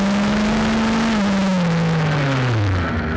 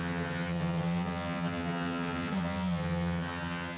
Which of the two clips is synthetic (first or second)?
second